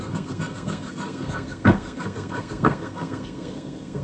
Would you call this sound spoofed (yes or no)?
yes